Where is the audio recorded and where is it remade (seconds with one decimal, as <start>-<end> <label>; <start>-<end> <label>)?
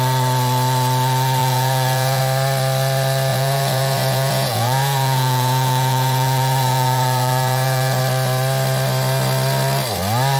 0.0-1.4 recorded; 1.4-2.2 remade; 2.2-3.3 recorded; 3.3-8.0 remade; 8.0-10.4 recorded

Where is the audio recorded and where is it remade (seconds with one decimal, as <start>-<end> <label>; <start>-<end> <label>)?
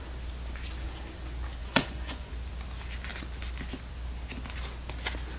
0.0-1.6 recorded; 1.6-2.3 remade; 2.3-5.4 recorded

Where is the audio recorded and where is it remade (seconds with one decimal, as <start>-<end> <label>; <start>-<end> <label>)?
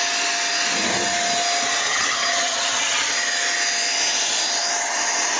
0.0-1.9 recorded; 1.9-3.1 remade; 3.1-5.4 recorded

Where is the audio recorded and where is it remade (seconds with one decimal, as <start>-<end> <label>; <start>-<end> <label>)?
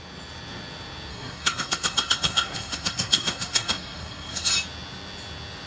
0.0-1.1 recorded; 1.1-4.5 remade; 4.5-5.7 recorded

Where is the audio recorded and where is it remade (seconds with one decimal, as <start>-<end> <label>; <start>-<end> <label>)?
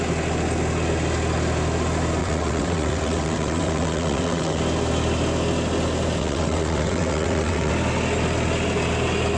0.0-2.2 recorded; 2.2-4.6 remade; 4.6-6.2 recorded; 6.2-7.7 remade; 7.7-9.4 recorded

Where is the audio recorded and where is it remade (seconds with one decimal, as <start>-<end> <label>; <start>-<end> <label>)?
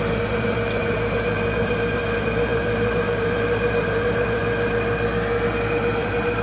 0.0-4.4 remade; 4.4-6.0 recorded; 6.0-6.4 remade